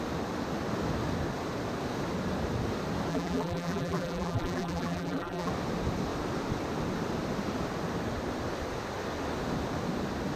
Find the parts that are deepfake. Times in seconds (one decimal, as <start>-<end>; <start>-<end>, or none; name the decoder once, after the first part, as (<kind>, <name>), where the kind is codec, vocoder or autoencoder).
3.1-5.5 (vocoder, BigVGAN v2)